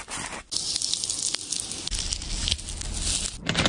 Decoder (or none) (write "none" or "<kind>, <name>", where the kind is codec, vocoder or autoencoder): none